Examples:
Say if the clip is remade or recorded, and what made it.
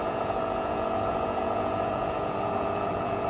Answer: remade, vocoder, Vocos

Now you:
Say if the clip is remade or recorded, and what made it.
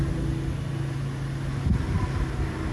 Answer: recorded